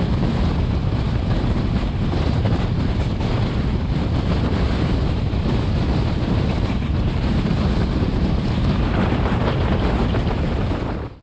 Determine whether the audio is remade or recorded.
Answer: remade